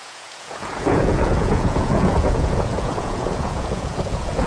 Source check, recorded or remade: remade